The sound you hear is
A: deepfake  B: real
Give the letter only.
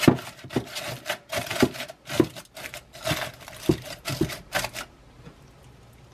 B